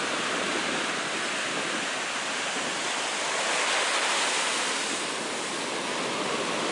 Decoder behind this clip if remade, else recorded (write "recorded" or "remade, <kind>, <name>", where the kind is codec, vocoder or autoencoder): recorded